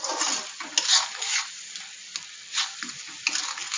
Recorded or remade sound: recorded